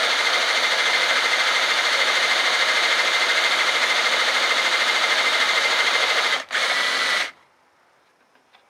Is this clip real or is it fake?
real